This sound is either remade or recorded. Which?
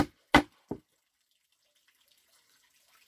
recorded